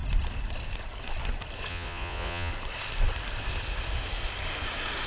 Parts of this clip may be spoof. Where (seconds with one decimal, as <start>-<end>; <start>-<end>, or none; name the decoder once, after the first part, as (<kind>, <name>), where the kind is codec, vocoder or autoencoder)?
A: 1.7-2.5 (vocoder, Vocos)